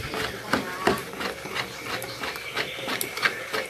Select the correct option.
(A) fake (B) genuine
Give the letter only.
B